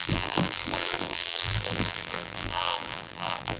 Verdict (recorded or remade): remade